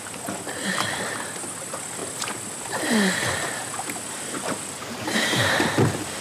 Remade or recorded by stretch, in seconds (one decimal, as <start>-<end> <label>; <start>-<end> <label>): 0.0-2.0 recorded; 2.0-5.7 remade; 5.7-6.2 recorded